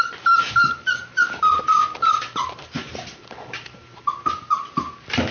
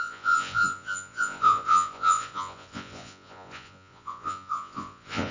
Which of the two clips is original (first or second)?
first